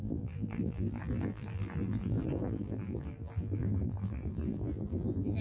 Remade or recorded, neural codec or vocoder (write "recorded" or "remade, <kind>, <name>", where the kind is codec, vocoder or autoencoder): remade, vocoder, BigVGAN v2